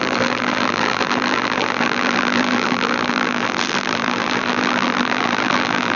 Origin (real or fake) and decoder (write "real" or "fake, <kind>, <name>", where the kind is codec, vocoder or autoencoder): fake, vocoder, BigVGAN v2